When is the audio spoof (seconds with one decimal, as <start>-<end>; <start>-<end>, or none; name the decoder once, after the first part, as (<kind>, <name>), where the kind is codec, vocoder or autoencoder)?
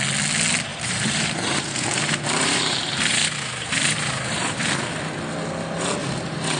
0.7-4.7 (vocoder, BigVGAN v2); 6.0-6.6